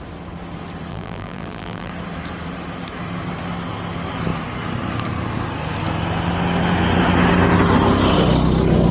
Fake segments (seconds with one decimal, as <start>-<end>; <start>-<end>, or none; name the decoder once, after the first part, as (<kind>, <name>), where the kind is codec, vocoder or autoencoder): 0.9-1.9 (vocoder, BigVGAN v2)